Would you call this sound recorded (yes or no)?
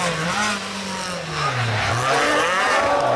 yes